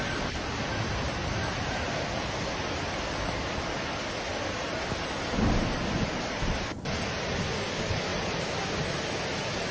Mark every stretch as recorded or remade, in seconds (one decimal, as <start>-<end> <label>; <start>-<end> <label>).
0.0-9.7 recorded